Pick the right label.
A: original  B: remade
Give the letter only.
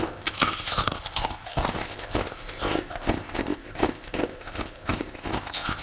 B